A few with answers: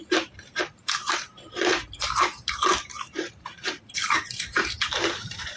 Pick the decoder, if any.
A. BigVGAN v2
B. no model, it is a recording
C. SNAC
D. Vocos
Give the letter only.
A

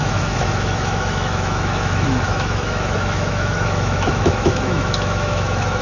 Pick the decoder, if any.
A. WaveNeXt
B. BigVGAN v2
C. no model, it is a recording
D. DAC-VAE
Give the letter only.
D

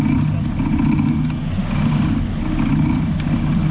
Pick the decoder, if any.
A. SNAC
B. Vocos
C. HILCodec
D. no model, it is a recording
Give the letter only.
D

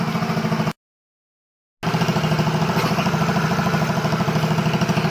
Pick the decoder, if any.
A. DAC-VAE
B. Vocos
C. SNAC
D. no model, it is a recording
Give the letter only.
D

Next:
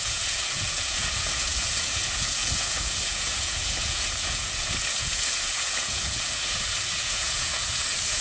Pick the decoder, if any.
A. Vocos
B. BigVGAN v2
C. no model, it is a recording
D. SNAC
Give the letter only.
A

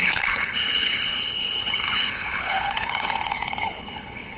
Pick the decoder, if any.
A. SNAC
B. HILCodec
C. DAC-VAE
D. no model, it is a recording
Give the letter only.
B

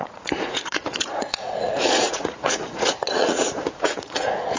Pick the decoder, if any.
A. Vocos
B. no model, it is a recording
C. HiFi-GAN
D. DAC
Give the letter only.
A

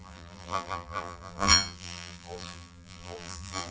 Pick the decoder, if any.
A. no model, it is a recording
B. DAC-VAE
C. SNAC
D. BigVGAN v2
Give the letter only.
D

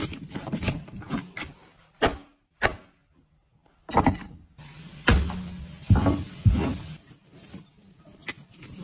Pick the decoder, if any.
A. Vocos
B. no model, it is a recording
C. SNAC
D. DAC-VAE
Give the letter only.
B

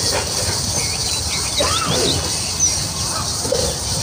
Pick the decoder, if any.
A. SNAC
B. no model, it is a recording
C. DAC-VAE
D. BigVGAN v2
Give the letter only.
B